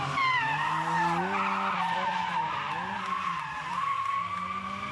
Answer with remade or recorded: recorded